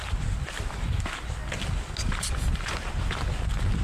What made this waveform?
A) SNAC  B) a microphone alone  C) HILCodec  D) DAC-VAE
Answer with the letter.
B